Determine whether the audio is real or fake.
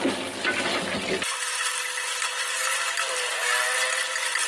real